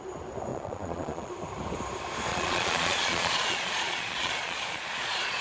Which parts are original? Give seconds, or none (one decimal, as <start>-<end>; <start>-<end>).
0.0-0.5; 1.3-2.3